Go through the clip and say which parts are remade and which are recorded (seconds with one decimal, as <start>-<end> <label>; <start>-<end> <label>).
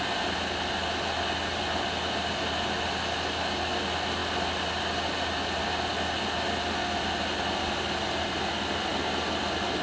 0.0-9.8 recorded